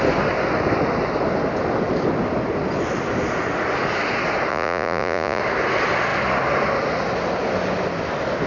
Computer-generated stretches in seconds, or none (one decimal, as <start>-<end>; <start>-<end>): 4.5-5.4